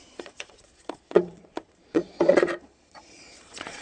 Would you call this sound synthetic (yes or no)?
yes